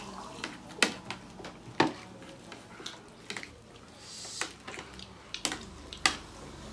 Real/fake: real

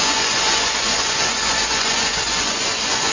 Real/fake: fake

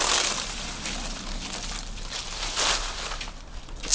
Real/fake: real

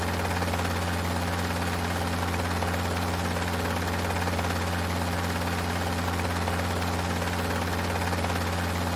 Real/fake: real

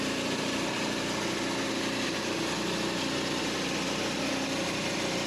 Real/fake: real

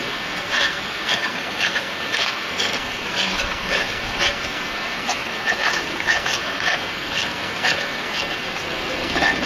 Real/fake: fake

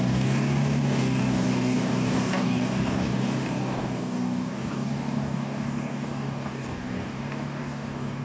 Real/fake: fake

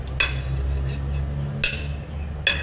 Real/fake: real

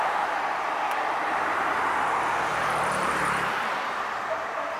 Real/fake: fake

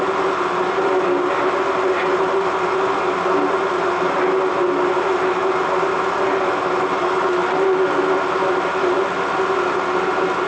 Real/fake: real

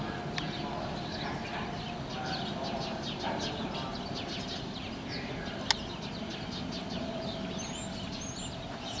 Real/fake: real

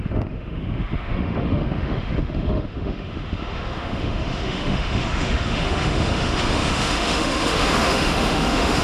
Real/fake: fake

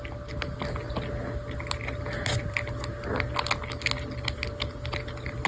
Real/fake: real